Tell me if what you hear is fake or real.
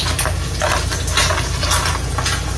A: real